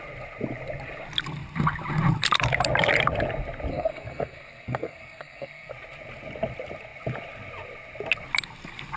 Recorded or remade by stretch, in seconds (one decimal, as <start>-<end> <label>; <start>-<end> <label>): 0.0-3.7 recorded; 3.7-5.7 remade; 5.7-9.0 recorded